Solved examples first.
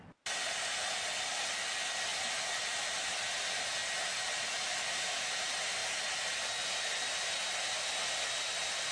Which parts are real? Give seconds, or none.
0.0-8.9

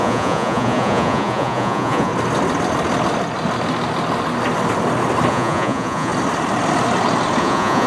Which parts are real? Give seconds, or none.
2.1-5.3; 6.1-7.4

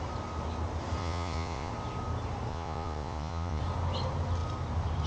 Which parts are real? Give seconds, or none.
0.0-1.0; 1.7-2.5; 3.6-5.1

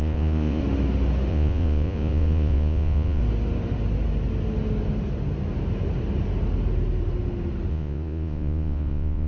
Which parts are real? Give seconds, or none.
0.6-1.3; 3.2-7.7